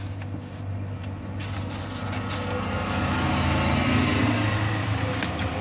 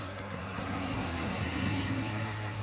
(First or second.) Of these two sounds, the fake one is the second